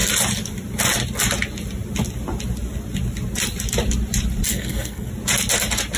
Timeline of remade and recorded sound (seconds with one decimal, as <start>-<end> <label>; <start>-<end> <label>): 0.0-4.5 recorded; 4.5-5.1 remade; 5.1-6.0 recorded